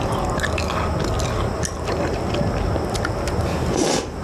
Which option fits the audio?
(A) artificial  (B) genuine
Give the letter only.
B